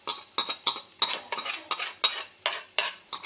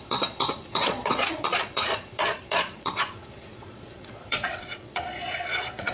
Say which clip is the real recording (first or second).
first